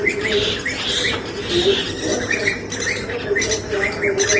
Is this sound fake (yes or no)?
no